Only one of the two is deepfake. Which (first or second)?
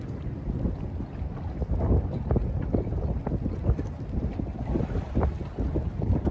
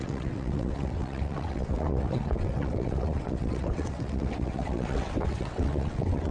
second